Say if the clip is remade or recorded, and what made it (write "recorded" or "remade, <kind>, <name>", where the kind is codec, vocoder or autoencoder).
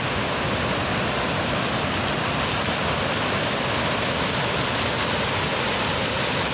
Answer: recorded